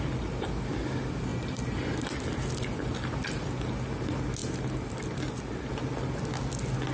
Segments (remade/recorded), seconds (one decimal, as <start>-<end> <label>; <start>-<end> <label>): 0.0-1.3 recorded; 1.3-2.1 remade; 2.1-6.9 recorded